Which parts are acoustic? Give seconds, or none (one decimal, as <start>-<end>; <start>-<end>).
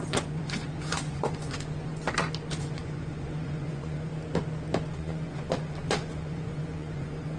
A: 1.9-2.5; 4.1-4.9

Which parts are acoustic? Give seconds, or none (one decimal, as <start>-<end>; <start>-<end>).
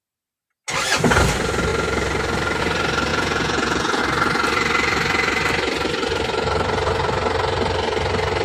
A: 0.0-3.1; 4.0-8.4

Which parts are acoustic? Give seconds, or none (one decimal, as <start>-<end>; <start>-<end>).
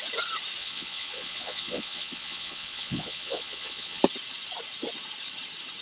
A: 0.0-0.6; 4.0-5.8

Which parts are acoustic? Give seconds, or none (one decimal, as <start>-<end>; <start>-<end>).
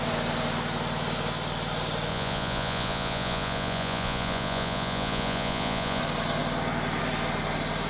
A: 0.0-2.1; 6.0-7.9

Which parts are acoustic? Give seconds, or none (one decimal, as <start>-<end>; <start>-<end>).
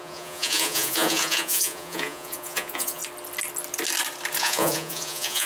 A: 3.0-4.4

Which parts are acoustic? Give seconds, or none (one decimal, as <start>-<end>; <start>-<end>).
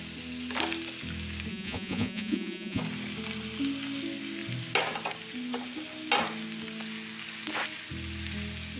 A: 0.0-1.5; 2.8-8.8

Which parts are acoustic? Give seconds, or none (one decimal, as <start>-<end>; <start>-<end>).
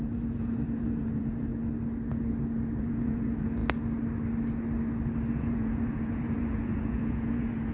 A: 1.5-2.8; 3.6-5.3